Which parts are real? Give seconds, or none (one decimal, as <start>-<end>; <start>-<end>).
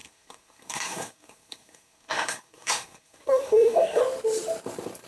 4.0-5.1